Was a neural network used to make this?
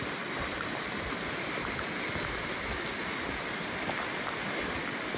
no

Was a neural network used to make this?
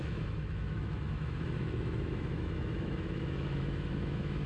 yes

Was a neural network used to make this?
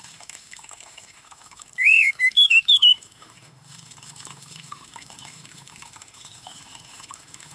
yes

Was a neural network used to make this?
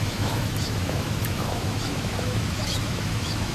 yes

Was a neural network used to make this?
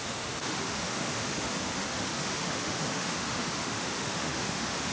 yes